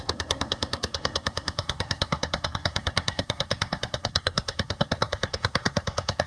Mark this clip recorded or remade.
remade